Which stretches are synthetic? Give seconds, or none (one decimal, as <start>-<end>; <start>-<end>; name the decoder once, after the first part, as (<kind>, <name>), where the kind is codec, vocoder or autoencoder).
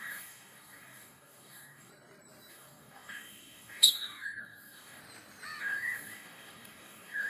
0.0-1.9 (codec, DAC); 2.5-5.0; 5.6-7.3